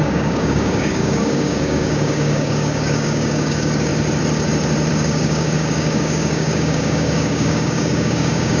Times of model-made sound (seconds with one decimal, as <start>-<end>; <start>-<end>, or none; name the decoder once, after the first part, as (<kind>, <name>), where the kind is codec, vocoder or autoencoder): 0.0-3.9 (codec, DAC); 4.9-8.6